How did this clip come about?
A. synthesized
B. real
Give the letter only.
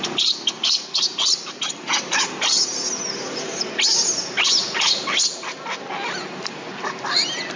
B